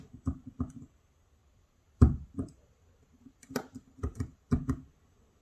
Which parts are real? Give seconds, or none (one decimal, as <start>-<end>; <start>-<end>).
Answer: 0.0-1.4; 4.5-5.4